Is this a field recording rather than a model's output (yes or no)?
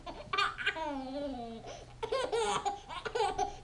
yes